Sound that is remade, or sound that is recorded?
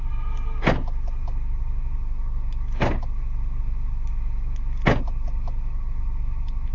recorded